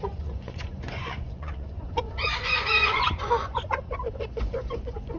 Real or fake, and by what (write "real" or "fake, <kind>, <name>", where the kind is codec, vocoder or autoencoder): fake, vocoder, Vocos